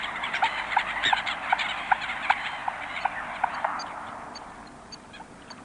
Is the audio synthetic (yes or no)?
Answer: no